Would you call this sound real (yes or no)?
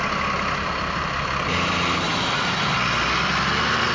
yes